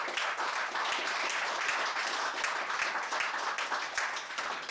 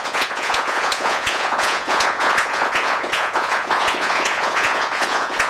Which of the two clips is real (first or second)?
first